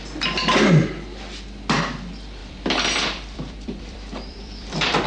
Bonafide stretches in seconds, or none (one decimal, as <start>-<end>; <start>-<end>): 0.0-2.4